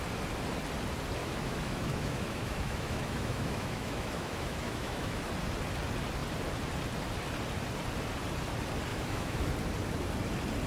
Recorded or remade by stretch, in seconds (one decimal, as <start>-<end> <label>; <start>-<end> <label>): 0.0-1.2 recorded; 1.2-5.3 remade; 5.3-8.9 recorded; 8.9-9.5 remade; 9.5-10.7 recorded